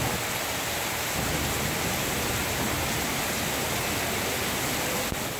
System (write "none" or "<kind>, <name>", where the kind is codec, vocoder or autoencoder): none